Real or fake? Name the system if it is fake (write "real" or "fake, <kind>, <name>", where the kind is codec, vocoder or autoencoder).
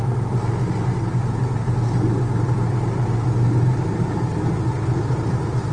real